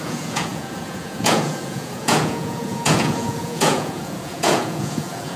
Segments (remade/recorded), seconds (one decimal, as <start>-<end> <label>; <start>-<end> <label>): 0.0-5.4 remade